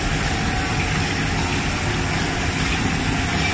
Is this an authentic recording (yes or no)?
yes